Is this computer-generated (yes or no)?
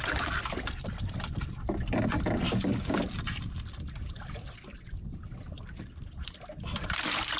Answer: yes